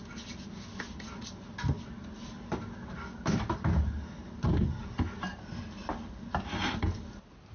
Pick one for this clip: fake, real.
real